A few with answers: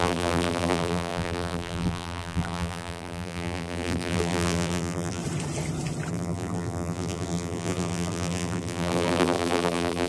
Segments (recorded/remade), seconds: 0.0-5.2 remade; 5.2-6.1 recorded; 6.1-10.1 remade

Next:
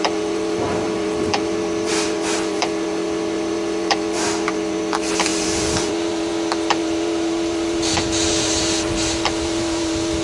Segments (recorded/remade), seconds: 0.0-10.2 remade

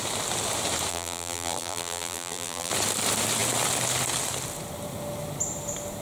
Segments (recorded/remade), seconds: 0.0-0.9 recorded; 0.9-2.7 remade; 2.7-6.0 recorded

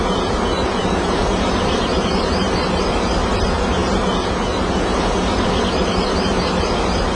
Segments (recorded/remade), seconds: 0.0-0.8 recorded; 0.8-2.3 remade; 2.3-7.1 recorded

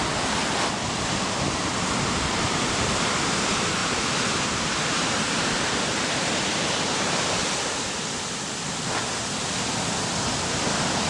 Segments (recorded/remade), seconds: 0.0-3.8 recorded; 3.8-7.4 remade; 7.4-11.1 recorded

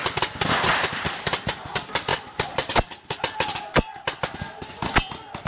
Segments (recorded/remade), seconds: 0.0-5.5 recorded

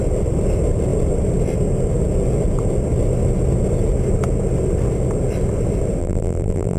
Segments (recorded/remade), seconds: 0.0-6.0 recorded; 6.0-6.8 remade

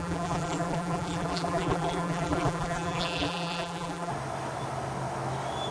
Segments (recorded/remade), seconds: 0.0-4.1 remade; 4.1-5.7 recorded